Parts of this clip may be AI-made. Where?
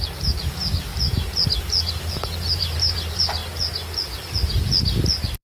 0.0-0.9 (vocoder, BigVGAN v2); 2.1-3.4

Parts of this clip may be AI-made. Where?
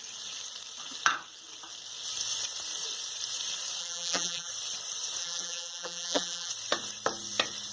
3.8-4.5 (vocoder, BigVGAN v2); 5.2-6.5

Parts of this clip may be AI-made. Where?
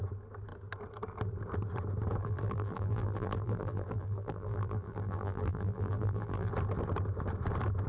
2.2-6.5 (vocoder, BigVGAN v2)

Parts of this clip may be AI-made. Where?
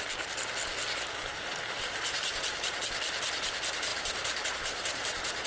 1.3-2.8 (vocoder, BigVGAN v2); 3.9-5.5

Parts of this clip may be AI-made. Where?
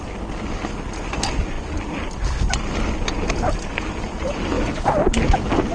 none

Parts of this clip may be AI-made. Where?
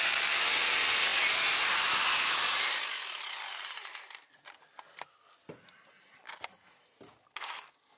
none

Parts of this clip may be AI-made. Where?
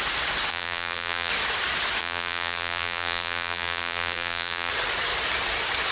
0.5-1.3 (vocoder, BigVGAN v2); 2.0-4.7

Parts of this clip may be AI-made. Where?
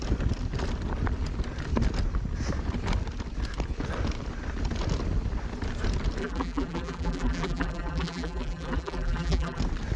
6.2-9.6 (vocoder, BigVGAN v2)